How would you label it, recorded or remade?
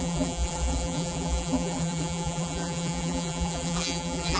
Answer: remade